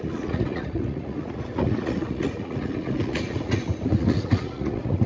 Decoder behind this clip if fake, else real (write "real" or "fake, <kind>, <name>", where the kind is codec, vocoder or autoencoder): fake, vocoder, Vocos